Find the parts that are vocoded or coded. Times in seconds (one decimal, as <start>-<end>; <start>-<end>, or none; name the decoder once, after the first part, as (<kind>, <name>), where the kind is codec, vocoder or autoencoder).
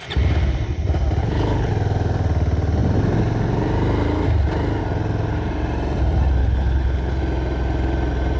1.2-1.7 (codec, HILCodec); 6.4-7.2